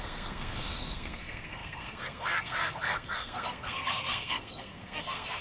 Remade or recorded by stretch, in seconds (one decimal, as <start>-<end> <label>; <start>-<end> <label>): 0.0-5.4 remade